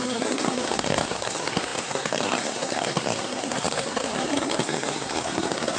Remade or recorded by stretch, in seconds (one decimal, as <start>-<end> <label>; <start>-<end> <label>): 0.0-5.8 remade